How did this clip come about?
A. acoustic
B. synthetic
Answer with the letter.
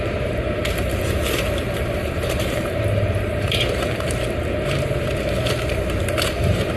B